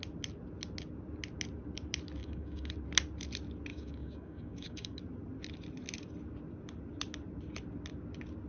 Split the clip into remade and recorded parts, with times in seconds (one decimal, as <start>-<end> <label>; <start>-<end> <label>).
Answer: 0.0-2.2 recorded; 2.2-2.7 remade; 2.7-3.7 recorded; 3.7-5.0 remade; 5.0-8.5 recorded